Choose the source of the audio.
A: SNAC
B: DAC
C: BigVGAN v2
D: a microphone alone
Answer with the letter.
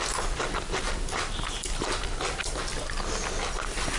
D